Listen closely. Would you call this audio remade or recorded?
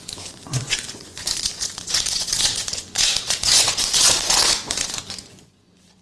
remade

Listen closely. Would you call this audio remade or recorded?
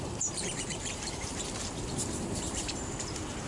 remade